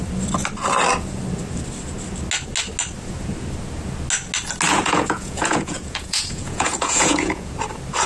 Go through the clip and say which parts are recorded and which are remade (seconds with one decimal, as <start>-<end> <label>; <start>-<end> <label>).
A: 0.0-4.7 recorded; 4.7-7.5 remade; 7.5-8.1 recorded

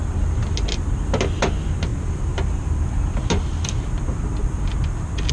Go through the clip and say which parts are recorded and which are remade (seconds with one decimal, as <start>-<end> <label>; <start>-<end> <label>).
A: 0.0-5.3 recorded

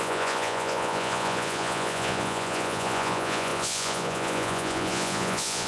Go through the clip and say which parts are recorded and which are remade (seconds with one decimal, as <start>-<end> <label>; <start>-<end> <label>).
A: 0.0-5.7 remade

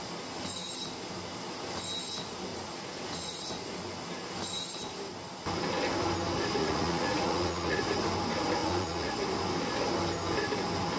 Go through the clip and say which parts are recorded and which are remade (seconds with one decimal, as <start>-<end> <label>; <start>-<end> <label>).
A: 0.0-2.5 recorded; 2.5-3.4 remade; 3.4-6.6 recorded; 6.6-7.8 remade; 7.8-8.6 recorded; 8.6-9.1 remade; 9.1-11.0 recorded

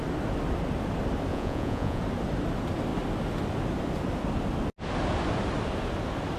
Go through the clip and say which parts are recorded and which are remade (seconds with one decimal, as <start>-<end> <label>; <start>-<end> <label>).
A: 0.0-1.3 recorded; 1.3-2.0 remade; 2.0-6.4 recorded

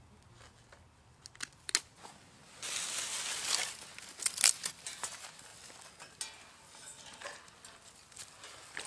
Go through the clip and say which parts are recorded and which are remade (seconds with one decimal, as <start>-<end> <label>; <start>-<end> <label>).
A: 0.0-8.9 recorded